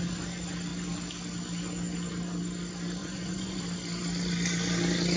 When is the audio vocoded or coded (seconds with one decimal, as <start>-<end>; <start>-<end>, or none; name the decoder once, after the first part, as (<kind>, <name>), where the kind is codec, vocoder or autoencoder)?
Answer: 3.0-3.6 (vocoder, Vocos)